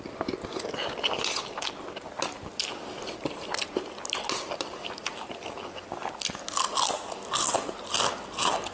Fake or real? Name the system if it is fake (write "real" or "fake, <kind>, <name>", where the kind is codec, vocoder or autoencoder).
real